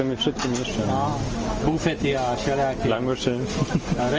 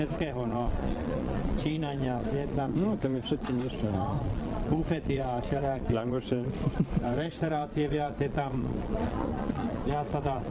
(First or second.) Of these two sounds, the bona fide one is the first